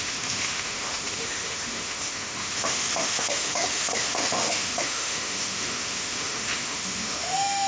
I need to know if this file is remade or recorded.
remade